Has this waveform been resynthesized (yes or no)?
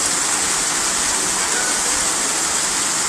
no